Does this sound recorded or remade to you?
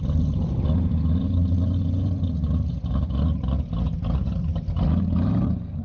recorded